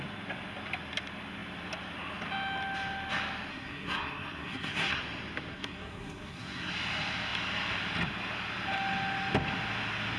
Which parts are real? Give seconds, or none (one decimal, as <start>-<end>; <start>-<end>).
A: 0.0-3.5; 5.0-5.5; 6.7-10.2